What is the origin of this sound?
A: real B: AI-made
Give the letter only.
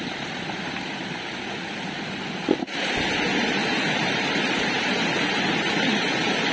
B